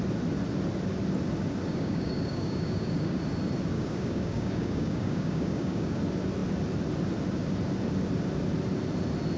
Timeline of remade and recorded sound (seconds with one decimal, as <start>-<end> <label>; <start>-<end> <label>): 0.0-1.7 recorded; 1.7-3.2 remade; 3.2-3.7 recorded; 3.7-6.0 remade; 6.0-9.4 recorded